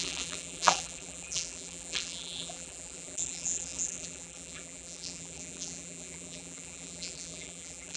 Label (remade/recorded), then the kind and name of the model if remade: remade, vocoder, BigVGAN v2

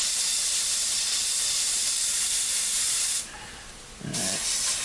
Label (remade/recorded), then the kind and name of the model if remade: remade, vocoder, BigVGAN v2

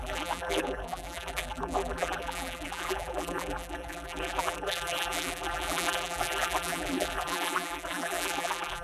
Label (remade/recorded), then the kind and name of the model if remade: remade, vocoder, BigVGAN v2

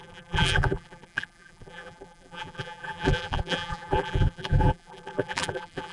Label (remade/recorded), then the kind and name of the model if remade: remade, vocoder, BigVGAN v2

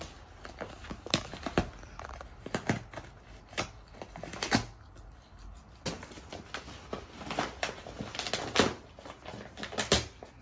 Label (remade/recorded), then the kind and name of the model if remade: recorded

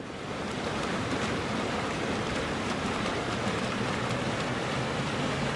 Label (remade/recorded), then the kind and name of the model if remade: remade, vocoder, BigVGAN v2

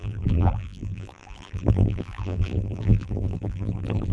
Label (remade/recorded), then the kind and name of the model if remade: remade, vocoder, BigVGAN v2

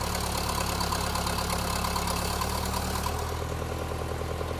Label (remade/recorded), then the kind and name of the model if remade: recorded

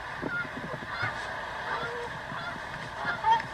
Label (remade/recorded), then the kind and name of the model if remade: remade, vocoder, BigVGAN v2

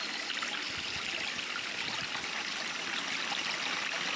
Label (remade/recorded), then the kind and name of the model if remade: recorded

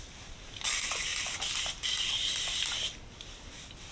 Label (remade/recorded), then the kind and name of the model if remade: recorded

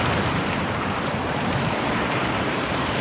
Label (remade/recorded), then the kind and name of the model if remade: remade, vocoder, BigVGAN v2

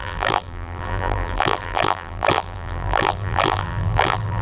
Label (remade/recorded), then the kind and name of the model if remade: remade, vocoder, BigVGAN v2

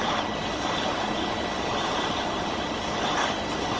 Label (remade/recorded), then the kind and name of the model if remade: remade, vocoder, BigVGAN v2